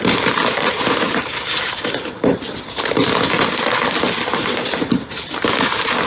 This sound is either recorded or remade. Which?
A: recorded